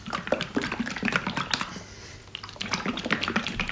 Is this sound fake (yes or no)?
no